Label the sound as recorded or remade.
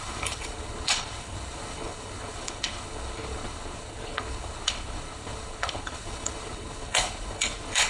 remade